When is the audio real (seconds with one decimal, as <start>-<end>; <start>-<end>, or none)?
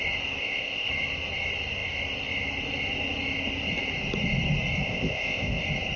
0.0-0.4; 0.9-4.8; 5.6-6.0